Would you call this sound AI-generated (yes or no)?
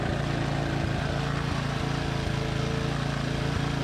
no